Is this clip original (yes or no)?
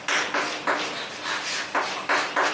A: yes